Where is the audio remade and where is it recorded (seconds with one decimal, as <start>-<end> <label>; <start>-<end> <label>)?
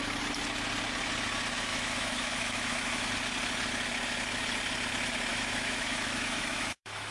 0.0-1.7 recorded; 1.7-3.1 remade; 3.1-5.3 recorded; 5.3-7.1 remade